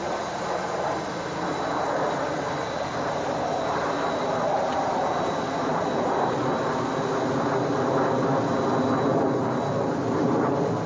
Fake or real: real